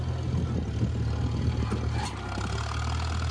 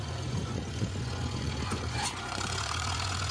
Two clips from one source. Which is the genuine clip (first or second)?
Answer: first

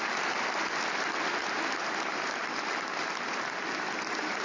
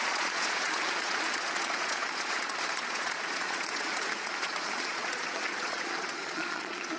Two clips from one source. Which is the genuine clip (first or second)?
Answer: first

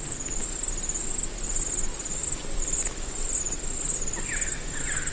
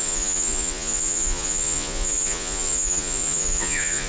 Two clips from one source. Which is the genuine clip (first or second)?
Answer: first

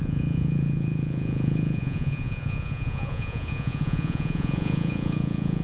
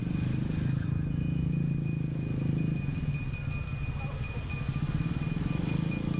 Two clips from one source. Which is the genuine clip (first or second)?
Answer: second